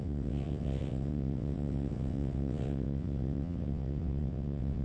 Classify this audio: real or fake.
fake